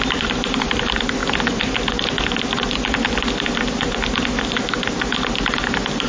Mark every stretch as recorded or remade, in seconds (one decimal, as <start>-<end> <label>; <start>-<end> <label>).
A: 0.0-6.1 recorded